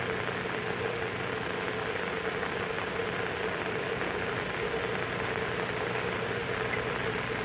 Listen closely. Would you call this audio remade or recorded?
recorded